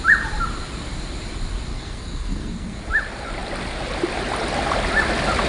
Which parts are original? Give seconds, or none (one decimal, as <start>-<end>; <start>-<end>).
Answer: 0.0-1.7; 2.8-5.5